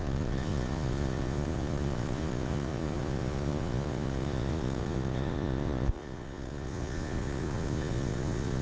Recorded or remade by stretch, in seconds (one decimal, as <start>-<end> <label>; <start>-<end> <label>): 0.0-8.6 remade